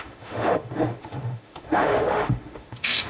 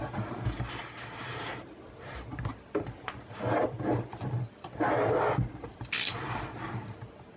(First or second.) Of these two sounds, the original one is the second